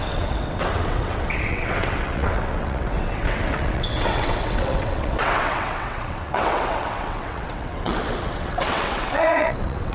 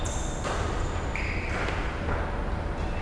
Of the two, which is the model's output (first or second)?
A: first